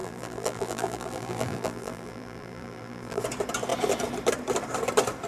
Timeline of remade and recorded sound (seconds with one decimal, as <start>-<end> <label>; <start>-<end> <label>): 0.0-3.2 remade; 3.2-5.3 recorded